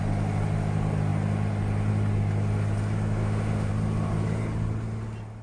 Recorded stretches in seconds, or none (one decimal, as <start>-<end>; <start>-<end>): 0.0-3.2; 3.7-5.4